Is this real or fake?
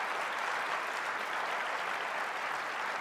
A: real